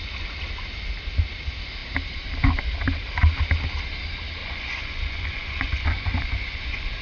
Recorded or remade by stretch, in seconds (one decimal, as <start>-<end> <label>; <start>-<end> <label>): 0.0-4.4 recorded; 4.4-7.0 remade